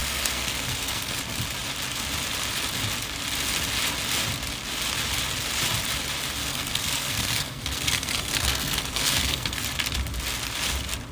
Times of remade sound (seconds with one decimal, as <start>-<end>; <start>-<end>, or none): 0.0-1.2; 6.4-9.6